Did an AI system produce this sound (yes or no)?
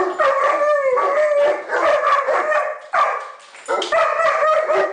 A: no